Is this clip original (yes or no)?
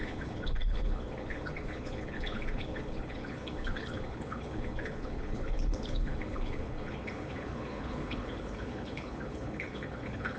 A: no